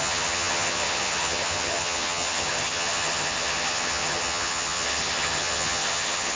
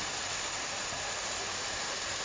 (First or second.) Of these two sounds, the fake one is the first